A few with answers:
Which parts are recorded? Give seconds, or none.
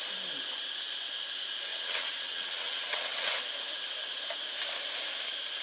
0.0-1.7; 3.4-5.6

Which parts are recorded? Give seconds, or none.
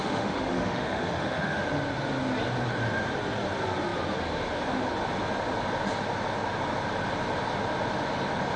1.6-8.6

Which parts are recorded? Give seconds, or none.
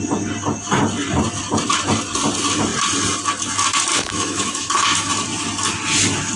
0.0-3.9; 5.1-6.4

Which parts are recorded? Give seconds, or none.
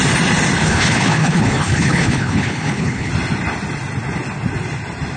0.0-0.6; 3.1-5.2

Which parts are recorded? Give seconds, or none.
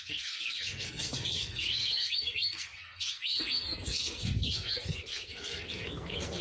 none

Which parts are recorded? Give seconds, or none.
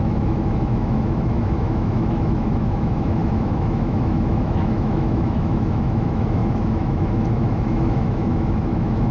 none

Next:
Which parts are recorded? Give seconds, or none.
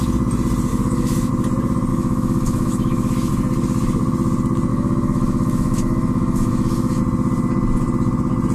0.0-0.7; 1.3-1.9; 3.3-4.7; 7.0-8.5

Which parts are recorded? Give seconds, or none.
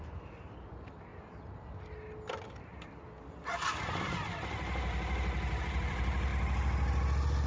1.1-5.6; 6.3-7.5